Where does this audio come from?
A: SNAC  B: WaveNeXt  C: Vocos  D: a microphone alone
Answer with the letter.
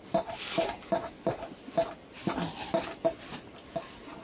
D